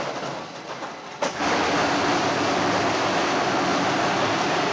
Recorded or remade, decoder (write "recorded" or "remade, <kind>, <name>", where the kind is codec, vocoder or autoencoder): recorded